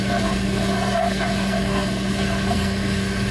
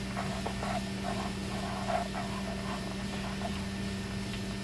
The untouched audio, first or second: second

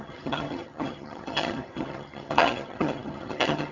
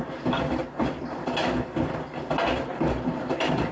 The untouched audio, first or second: second